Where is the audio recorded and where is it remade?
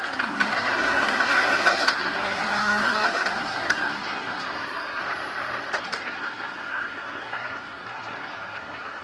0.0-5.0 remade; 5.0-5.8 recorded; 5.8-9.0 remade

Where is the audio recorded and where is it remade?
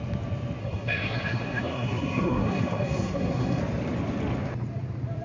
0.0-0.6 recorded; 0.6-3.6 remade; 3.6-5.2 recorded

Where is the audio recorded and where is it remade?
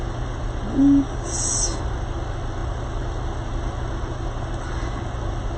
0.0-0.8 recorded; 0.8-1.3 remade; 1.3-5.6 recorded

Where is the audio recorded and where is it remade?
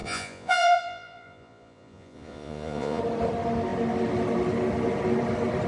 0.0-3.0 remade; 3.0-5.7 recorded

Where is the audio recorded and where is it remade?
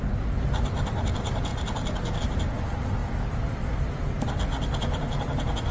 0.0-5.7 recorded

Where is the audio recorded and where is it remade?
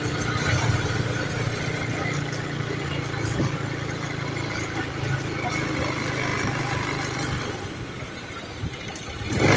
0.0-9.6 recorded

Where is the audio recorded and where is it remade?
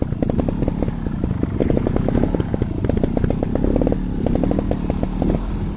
0.0-1.6 recorded; 1.6-2.5 remade; 2.5-5.8 recorded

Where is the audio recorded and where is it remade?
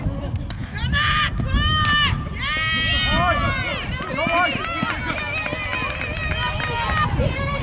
0.0-7.6 recorded